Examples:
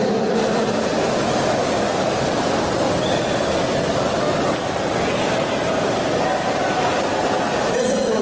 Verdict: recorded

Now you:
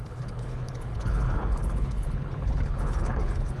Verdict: remade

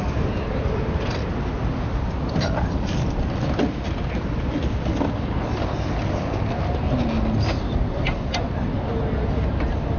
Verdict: recorded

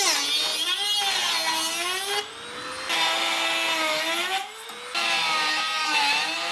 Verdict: recorded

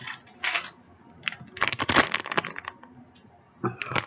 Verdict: recorded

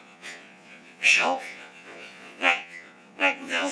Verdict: remade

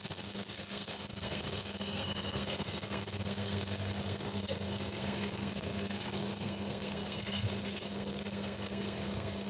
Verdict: remade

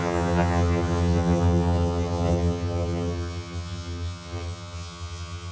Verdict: remade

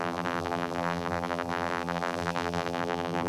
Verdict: remade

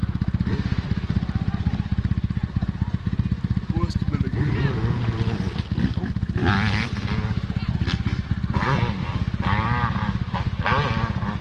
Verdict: recorded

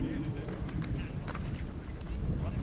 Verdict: recorded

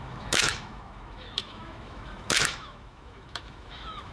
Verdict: remade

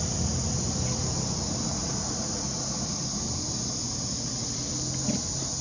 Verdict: recorded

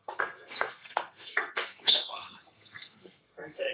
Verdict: remade